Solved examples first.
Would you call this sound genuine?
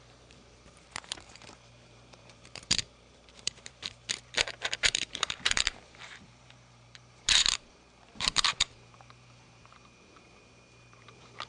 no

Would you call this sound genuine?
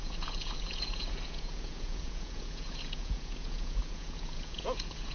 no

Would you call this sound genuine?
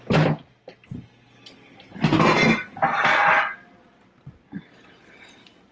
yes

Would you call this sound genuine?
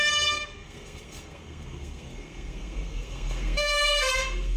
no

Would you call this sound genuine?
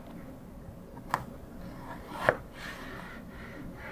yes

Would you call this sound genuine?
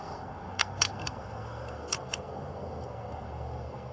no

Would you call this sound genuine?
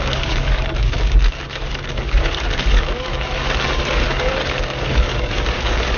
no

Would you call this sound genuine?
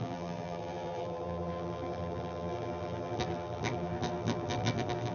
no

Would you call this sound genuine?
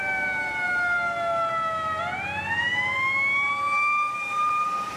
yes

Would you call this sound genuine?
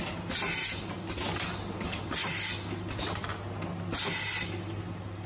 yes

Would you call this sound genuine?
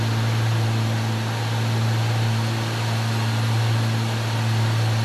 yes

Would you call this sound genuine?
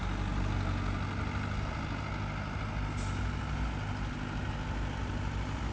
yes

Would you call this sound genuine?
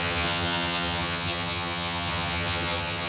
no